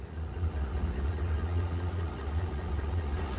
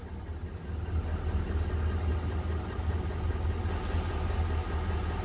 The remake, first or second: first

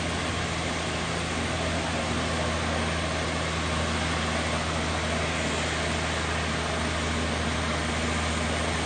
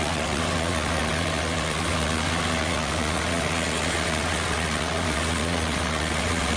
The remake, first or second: second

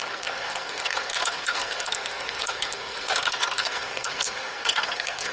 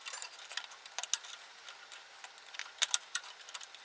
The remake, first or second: first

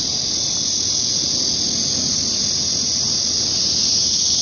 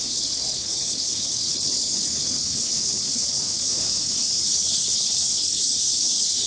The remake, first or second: second